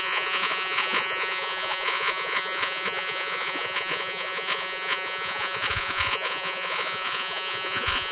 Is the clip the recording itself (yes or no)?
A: no